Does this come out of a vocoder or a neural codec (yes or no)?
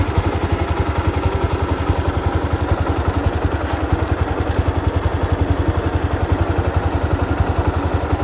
no